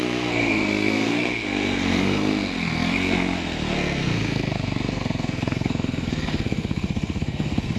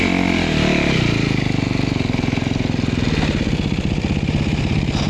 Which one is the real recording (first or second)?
second